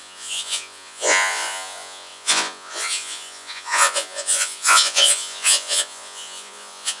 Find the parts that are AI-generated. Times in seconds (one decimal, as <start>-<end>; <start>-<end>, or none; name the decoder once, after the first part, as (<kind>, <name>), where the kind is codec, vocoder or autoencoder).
0.0-7.0 (vocoder, Vocos)